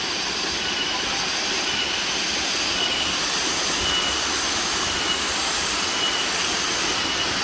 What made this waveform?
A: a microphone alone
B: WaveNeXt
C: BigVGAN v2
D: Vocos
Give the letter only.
A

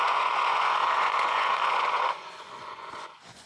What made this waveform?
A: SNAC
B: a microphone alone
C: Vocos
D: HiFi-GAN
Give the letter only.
C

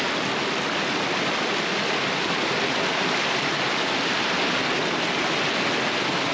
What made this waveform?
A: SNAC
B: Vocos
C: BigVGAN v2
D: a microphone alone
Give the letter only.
D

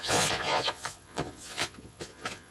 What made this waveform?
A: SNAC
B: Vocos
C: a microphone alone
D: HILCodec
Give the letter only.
B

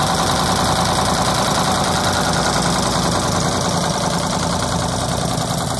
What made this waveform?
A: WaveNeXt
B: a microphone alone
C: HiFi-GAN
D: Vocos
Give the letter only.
B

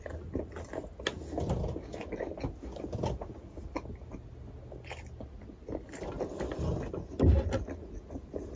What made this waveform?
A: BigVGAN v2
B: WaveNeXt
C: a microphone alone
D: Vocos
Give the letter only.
C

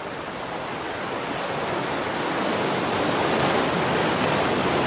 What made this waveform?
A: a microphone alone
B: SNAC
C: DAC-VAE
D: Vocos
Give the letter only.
A